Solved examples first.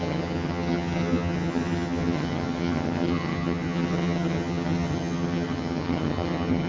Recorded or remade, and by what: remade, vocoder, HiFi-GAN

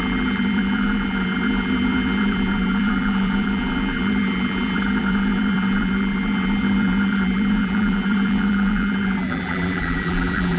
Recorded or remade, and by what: remade, vocoder, BigVGAN v2